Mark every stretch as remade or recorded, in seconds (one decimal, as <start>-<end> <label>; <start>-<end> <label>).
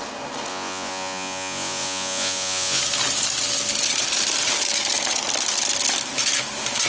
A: 0.0-0.5 recorded; 0.5-2.8 remade; 2.8-6.9 recorded